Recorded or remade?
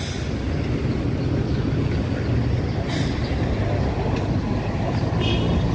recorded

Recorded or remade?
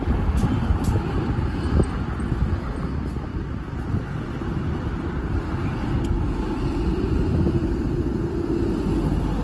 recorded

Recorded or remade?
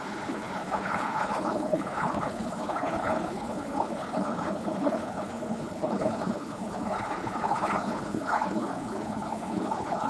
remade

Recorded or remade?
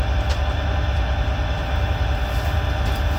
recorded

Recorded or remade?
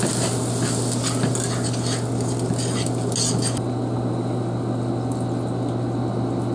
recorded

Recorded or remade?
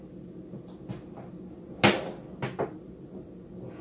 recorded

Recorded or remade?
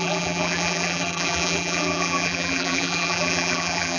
remade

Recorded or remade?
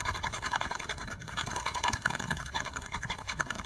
remade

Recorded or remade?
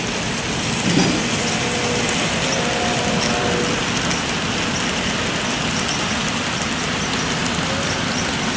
recorded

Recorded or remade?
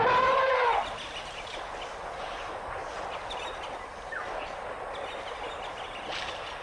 recorded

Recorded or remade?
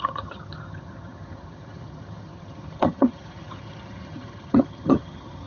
remade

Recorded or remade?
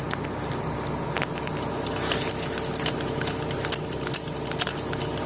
recorded